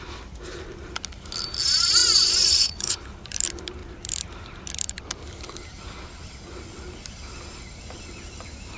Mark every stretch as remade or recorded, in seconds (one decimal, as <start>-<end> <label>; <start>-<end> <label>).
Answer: 0.0-2.0 recorded; 2.0-3.0 remade; 3.0-8.8 recorded